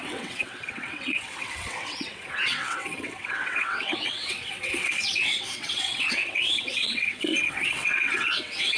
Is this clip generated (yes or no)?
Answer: yes